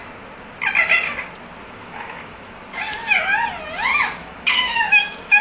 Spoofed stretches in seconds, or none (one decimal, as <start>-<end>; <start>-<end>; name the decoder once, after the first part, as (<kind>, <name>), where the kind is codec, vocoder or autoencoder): 1.6-2.5 (autoencoder, DAC-VAE); 3.9-5.4